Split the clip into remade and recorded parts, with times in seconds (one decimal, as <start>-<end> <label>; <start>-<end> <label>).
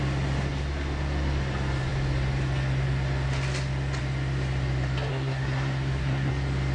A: 0.0-5.1 recorded; 5.1-6.3 remade; 6.3-6.7 recorded